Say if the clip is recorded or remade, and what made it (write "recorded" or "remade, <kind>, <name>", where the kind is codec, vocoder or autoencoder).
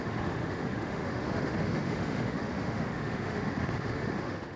remade, autoencoder, DAC-VAE